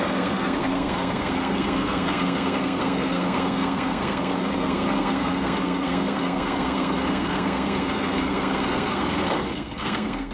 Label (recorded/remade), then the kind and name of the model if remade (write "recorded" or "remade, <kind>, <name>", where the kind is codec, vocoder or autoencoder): remade, codec, SNAC